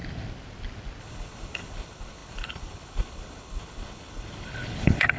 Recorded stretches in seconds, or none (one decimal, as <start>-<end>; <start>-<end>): 0.0-1.0